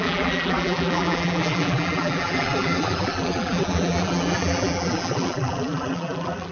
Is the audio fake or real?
fake